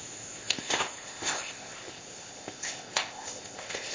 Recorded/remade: remade